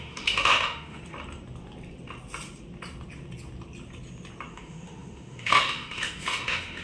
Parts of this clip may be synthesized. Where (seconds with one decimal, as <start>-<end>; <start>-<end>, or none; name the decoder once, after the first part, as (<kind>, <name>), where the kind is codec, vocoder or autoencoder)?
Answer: 0.0-1.0 (autoencoder, DAC-VAE); 4.5-6.8